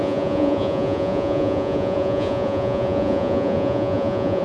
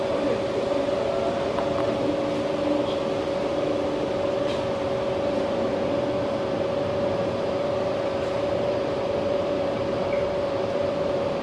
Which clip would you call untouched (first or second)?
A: second